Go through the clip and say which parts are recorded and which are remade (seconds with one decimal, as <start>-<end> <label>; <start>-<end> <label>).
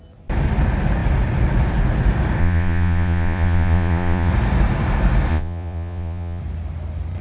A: 0.0-2.4 recorded; 2.4-4.3 remade; 4.3-5.3 recorded; 5.3-6.4 remade; 6.4-7.2 recorded